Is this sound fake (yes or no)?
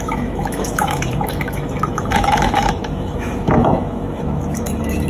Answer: yes